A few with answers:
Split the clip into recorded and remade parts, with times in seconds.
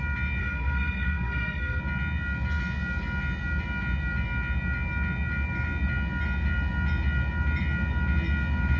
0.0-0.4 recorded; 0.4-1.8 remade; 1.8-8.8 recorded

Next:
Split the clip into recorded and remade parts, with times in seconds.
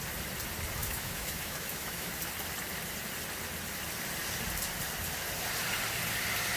0.0-0.8 recorded; 0.8-2.1 remade; 2.1-6.6 recorded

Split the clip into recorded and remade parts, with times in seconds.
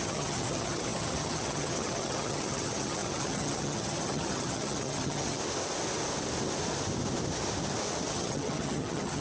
0.0-5.4 remade; 5.4-8.1 recorded; 8.1-9.2 remade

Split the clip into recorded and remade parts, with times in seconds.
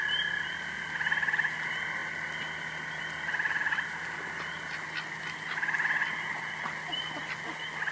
0.0-7.9 recorded